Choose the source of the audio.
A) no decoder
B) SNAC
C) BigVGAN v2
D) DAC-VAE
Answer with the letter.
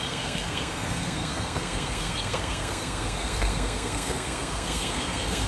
B